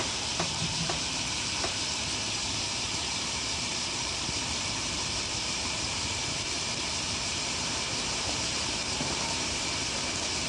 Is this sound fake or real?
fake